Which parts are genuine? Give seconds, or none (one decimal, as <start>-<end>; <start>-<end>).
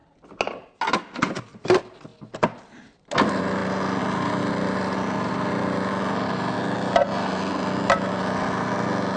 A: 0.0-9.2